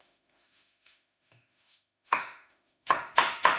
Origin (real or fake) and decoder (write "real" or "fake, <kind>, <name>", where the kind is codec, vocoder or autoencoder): fake, autoencoder, DAC-VAE